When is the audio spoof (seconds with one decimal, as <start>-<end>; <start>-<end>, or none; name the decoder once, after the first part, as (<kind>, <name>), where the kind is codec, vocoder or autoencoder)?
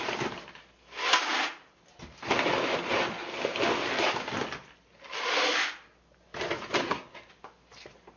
6.8-7.3 (codec, SNAC)